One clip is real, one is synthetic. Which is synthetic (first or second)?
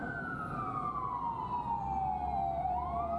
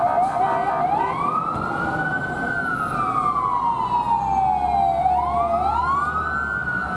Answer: first